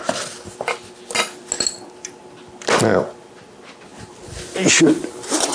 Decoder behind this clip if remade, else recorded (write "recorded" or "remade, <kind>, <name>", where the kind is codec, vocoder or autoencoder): recorded